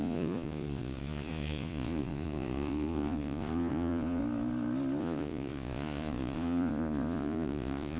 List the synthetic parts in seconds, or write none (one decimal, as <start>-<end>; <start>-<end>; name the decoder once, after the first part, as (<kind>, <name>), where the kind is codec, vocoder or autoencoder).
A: 0.0-4.2 (vocoder, Vocos); 5.0-8.0